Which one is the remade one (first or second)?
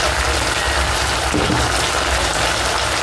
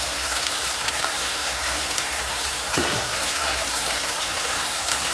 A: second